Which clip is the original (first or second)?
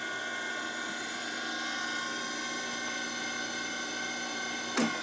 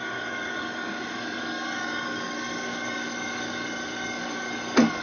first